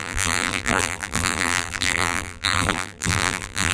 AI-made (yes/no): yes